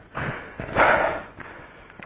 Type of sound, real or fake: fake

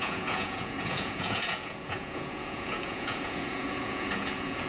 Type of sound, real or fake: fake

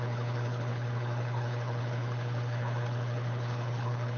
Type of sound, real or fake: fake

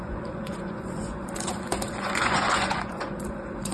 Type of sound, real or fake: fake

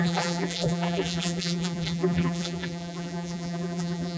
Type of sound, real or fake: fake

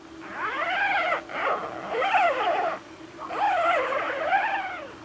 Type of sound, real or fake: real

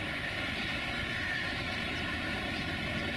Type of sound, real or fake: real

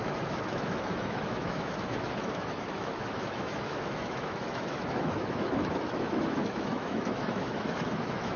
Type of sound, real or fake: fake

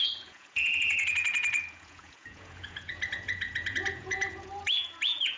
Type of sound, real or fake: fake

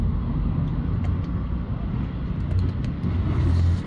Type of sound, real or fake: real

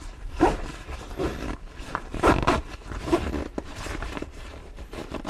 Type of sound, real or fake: fake